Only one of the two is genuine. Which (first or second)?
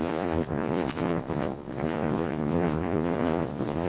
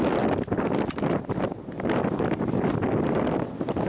second